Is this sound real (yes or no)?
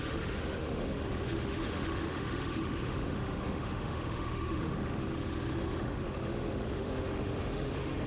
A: no